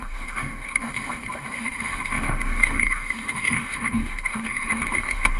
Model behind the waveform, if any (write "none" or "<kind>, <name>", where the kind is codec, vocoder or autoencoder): autoencoder, DAC-VAE